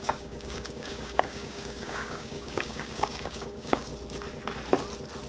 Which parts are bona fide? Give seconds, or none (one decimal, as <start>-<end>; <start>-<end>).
3.9-5.3